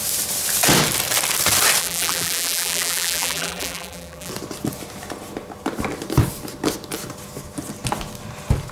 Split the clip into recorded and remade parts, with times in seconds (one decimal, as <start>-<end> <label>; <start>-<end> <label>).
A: 0.0-1.8 recorded; 1.8-4.3 remade; 4.3-8.7 recorded